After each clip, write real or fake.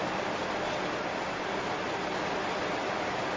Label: real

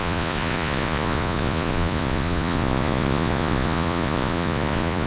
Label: fake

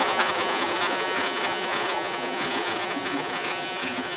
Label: fake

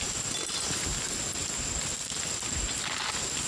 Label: real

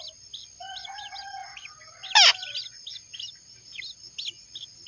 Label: real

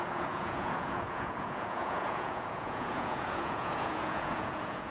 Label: fake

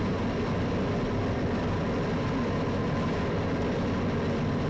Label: real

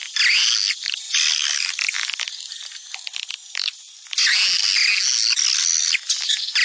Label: real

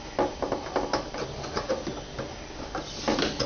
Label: real